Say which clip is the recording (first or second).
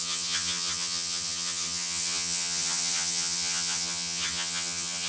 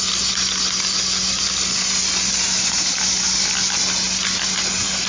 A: second